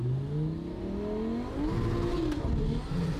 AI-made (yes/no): no